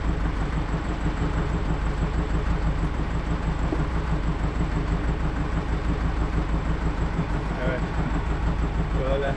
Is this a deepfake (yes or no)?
yes